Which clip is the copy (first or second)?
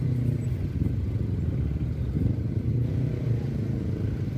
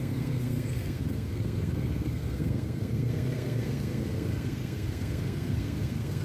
second